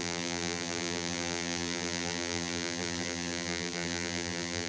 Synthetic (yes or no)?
yes